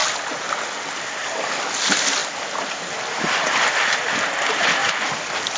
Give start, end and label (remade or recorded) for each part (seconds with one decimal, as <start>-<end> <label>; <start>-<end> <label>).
0.0-0.5 remade; 0.5-4.8 recorded; 4.8-5.6 remade

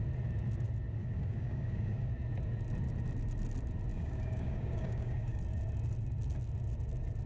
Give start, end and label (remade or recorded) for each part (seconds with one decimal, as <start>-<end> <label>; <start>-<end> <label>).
0.0-1.0 recorded; 1.0-2.1 remade; 2.1-3.9 recorded; 3.9-5.4 remade; 5.4-7.3 recorded

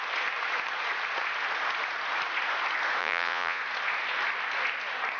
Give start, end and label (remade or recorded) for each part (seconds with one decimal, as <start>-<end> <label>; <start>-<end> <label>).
0.0-3.0 recorded; 3.0-3.6 remade; 3.6-5.2 recorded

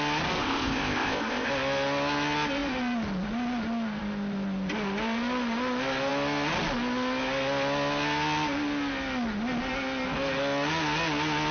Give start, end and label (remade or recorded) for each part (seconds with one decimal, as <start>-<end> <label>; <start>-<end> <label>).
0.0-0.4 recorded; 0.4-1.5 remade; 1.5-11.5 recorded